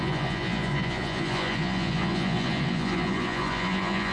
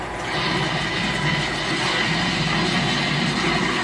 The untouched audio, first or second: second